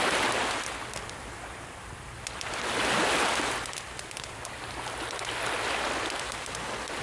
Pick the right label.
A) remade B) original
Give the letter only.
B